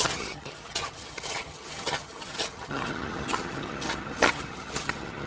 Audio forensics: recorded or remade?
remade